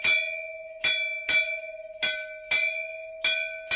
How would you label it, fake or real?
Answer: real